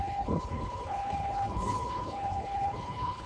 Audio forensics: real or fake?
fake